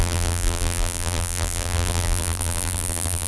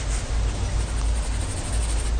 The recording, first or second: second